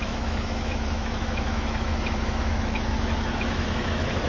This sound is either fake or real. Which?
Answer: fake